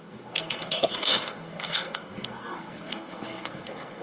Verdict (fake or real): fake